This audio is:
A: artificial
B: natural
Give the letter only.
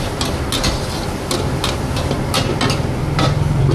B